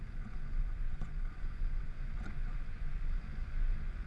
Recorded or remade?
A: remade